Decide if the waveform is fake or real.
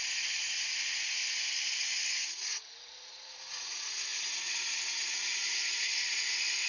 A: fake